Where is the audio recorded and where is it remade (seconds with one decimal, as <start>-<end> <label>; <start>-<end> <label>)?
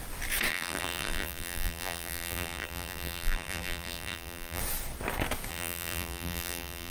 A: 0.0-0.5 recorded; 0.5-4.6 remade; 4.6-5.5 recorded; 5.5-6.9 remade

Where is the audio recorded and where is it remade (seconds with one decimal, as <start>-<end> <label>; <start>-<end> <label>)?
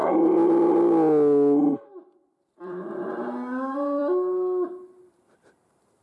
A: 0.0-2.4 recorded; 2.4-4.0 remade; 4.0-5.1 recorded; 5.1-6.0 remade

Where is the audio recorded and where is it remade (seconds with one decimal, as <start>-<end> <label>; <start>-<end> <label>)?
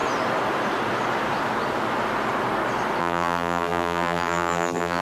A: 0.0-3.0 recorded; 3.0-5.0 remade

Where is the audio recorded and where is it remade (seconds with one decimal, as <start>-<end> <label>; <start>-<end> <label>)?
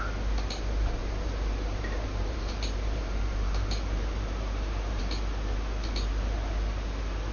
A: 0.0-1.0 recorded; 1.0-5.0 remade; 5.0-7.3 recorded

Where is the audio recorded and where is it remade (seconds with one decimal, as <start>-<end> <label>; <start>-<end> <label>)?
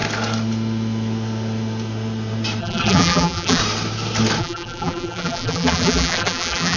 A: 0.0-2.6 recorded; 2.6-3.6 remade; 3.6-4.4 recorded; 4.4-6.8 remade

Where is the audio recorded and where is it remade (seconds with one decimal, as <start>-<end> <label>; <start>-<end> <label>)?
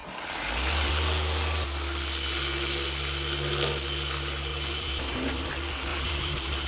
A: 0.0-0.9 remade; 0.9-4.5 recorded; 4.5-5.5 remade; 5.5-5.9 recorded; 5.9-6.7 remade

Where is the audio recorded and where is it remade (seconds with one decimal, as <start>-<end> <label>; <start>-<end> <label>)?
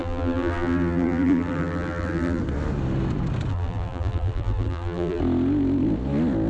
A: 0.0-2.4 remade; 2.4-3.5 recorded; 3.5-5.2 remade; 5.2-6.5 recorded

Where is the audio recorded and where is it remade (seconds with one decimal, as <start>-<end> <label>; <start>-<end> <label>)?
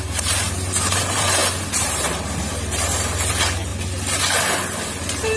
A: 0.0-3.7 remade; 3.7-5.0 recorded; 5.0-5.4 remade